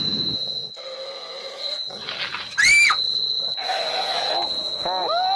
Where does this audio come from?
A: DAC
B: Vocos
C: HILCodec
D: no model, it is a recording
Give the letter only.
D